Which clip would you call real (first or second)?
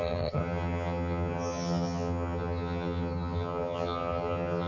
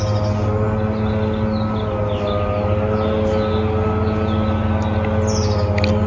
second